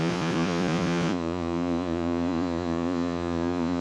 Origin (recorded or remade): remade